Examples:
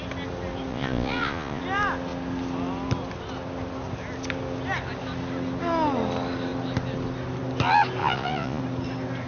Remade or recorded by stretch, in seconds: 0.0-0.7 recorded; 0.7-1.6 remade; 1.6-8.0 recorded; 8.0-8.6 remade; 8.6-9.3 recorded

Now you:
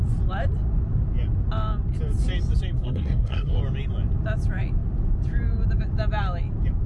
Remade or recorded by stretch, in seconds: 0.0-2.8 recorded; 2.8-3.6 remade; 3.6-6.9 recorded

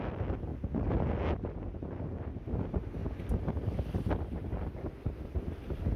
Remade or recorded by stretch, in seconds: 0.0-6.0 recorded

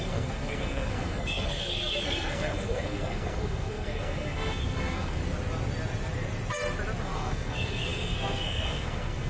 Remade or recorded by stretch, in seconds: 0.0-5.2 remade; 5.2-7.0 recorded; 7.0-9.3 remade

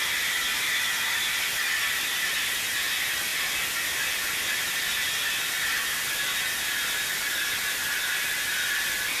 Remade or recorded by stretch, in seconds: 0.0-9.2 recorded